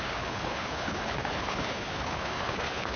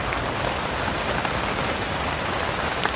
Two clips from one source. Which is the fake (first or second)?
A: first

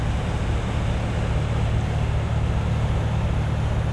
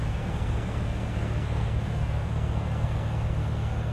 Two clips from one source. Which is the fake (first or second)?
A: second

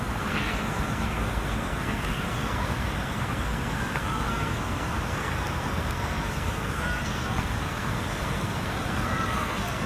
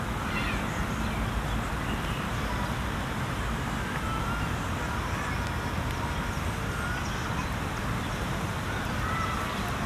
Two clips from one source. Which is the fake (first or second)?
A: first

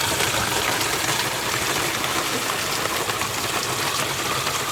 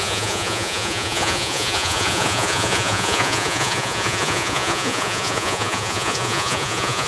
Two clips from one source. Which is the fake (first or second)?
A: second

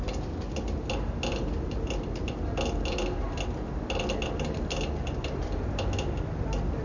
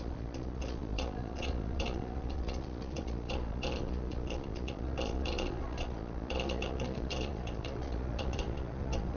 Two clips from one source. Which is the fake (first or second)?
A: second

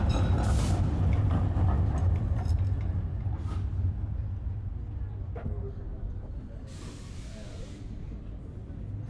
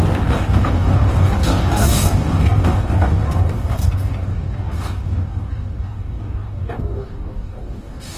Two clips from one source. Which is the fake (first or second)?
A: second